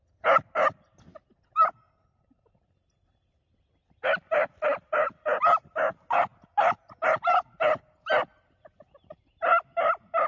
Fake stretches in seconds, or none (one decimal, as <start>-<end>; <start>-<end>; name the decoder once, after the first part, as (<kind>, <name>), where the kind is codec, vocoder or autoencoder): none